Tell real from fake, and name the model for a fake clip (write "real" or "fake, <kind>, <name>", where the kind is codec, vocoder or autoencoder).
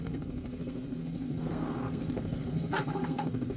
fake, codec, SNAC